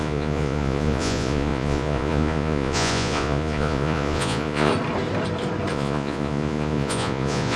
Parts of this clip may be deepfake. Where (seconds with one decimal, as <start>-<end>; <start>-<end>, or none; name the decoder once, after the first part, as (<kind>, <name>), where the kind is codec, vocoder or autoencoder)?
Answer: 0.0-4.7 (vocoder, Vocos); 5.7-7.6